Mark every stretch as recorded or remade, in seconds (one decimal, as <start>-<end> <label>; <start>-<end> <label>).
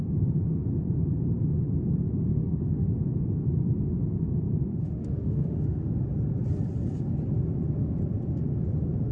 0.0-2.3 recorded; 2.3-2.9 remade; 2.9-4.7 recorded; 4.7-6.0 remade; 6.0-9.1 recorded